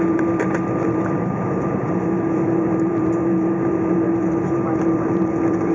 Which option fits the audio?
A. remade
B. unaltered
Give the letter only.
A